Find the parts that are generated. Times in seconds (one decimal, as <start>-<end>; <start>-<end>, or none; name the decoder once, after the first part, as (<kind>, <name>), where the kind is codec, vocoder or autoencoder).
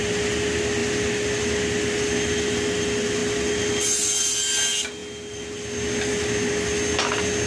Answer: none